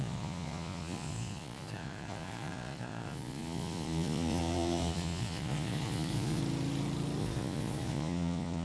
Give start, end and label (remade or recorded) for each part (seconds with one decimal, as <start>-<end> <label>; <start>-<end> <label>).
0.0-6.4 remade; 6.4-7.2 recorded; 7.2-8.6 remade